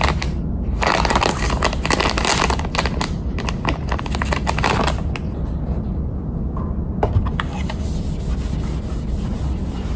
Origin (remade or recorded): recorded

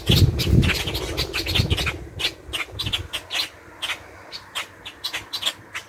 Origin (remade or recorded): recorded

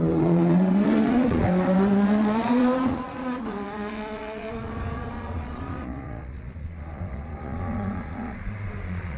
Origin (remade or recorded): remade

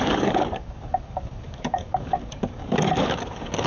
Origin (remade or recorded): remade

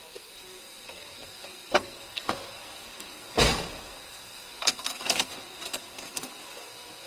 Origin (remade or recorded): remade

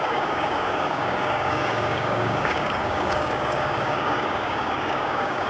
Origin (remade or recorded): remade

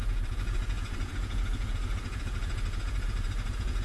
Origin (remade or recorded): remade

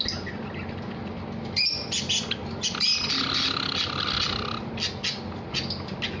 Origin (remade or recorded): recorded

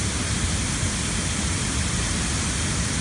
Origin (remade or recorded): recorded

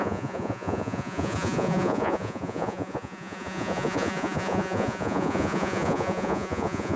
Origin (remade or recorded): remade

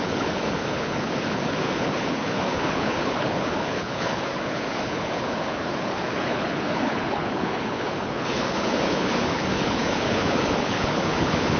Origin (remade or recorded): remade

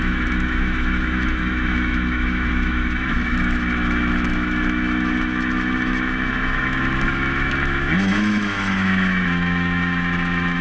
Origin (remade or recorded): remade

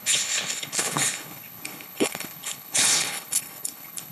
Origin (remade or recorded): remade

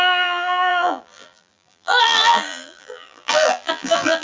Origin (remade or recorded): remade